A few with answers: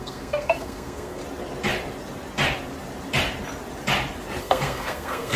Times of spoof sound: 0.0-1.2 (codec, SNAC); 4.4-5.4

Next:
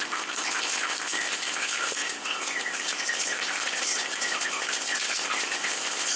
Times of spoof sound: 0.0-6.2 (codec, ZipCodec)

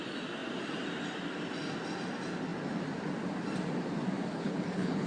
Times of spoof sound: 4.3-5.1 (codec, HILCodec)

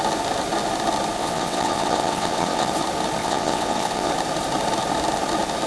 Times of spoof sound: 1.2-2.7 (vocoder, WaveNeXt); 3.2-4.1

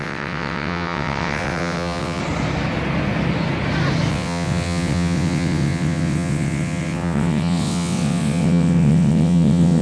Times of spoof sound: 0.0-2.2 (vocoder, WaveNeXt); 4.1-9.8

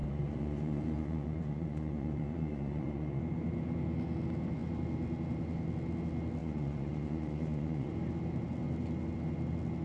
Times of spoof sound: 0.0-3.2 (vocoder, Vocos); 6.4-7.9

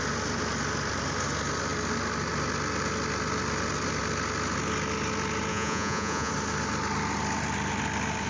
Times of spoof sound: 5.5-6.3 (vocoder, Vocos)